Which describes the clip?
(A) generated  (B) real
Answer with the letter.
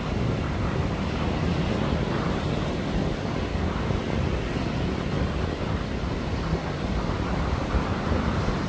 B